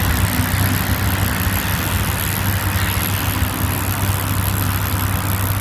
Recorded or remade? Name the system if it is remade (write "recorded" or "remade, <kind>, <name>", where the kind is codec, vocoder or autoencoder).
recorded